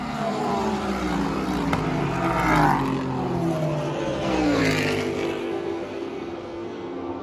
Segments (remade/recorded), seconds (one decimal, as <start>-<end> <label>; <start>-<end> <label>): 0.0-0.5 remade; 0.5-4.0 recorded; 4.0-4.6 remade; 4.6-5.4 recorded; 5.4-7.2 remade